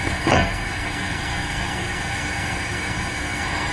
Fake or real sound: fake